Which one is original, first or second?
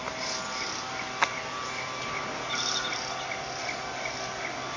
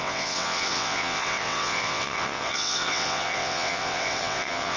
first